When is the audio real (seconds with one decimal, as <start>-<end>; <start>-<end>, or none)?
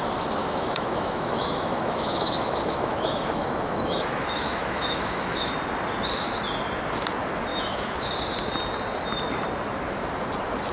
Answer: 0.0-0.4; 5.5-7.5; 8.1-10.7